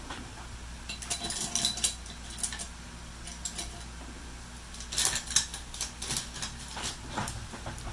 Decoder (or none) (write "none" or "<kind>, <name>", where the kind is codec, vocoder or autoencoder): none